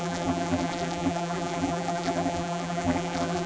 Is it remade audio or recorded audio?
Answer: remade